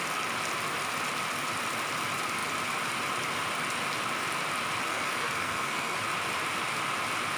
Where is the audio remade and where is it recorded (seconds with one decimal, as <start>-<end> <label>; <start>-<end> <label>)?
0.0-4.9 recorded; 4.9-6.0 remade; 6.0-7.4 recorded

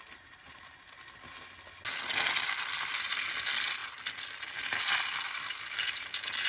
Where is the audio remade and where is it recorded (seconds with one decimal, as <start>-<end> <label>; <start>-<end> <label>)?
0.0-6.5 recorded

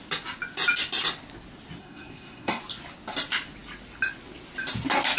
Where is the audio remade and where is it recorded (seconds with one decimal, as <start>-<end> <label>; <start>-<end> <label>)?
0.0-1.8 recorded; 1.8-2.6 remade; 2.6-5.2 recorded

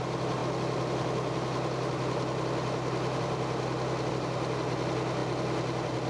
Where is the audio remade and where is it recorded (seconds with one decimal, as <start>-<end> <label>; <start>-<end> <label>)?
0.0-6.1 recorded

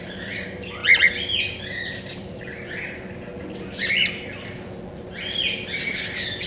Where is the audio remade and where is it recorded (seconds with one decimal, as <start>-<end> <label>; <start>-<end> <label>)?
0.0-0.8 remade; 0.8-1.6 recorded; 1.6-3.3 remade; 3.3-6.5 recorded

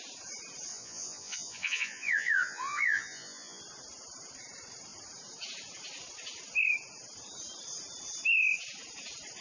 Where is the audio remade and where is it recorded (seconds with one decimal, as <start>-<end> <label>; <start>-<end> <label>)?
0.0-0.7 recorded; 0.7-3.6 remade; 3.6-9.4 recorded

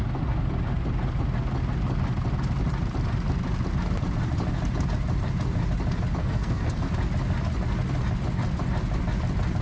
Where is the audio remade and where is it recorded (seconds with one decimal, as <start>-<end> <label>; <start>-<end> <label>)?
0.0-6.2 recorded; 6.2-6.9 remade; 6.9-9.6 recorded

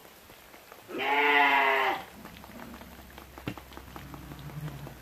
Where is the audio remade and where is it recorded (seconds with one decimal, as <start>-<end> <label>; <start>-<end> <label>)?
0.0-5.0 recorded